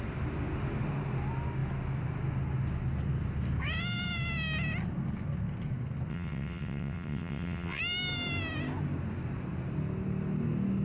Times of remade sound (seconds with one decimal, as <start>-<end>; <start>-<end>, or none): 6.1-7.8